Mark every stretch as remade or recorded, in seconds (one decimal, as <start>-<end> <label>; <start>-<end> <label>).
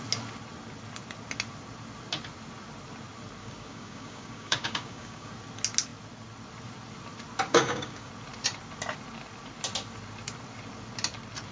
0.0-3.4 recorded; 3.4-5.3 remade; 5.3-7.5 recorded; 7.5-8.1 remade; 8.1-11.5 recorded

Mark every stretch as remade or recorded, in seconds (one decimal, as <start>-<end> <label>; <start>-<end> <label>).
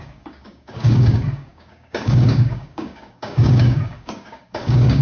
0.0-5.0 remade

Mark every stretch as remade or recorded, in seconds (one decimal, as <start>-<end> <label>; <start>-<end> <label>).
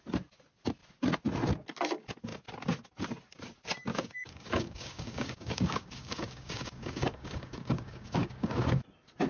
0.0-3.9 recorded; 3.9-8.8 remade; 8.8-9.3 recorded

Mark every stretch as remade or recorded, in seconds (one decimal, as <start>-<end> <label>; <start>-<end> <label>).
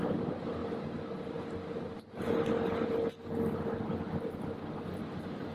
0.0-5.5 recorded